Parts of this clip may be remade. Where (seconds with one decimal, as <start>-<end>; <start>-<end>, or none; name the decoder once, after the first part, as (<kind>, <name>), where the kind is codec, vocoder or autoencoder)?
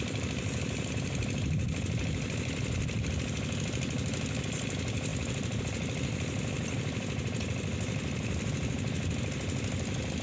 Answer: none